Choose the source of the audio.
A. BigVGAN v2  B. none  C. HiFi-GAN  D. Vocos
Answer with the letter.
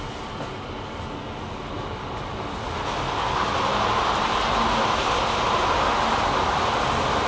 B